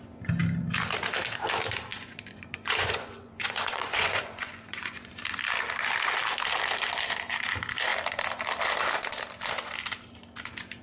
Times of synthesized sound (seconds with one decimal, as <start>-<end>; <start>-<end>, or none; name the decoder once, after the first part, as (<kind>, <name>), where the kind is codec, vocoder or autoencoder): 1.9-5.1 (vocoder, Vocos)